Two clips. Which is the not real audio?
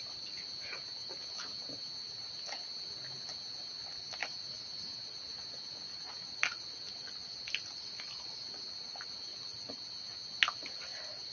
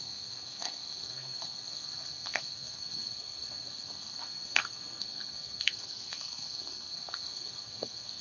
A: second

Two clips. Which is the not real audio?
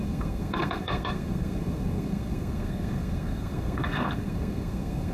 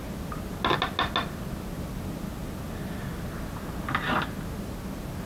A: first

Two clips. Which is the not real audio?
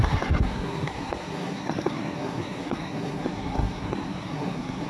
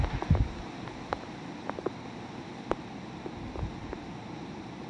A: first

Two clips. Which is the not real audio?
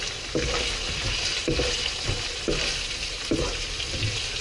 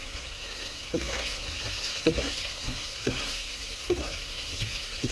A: second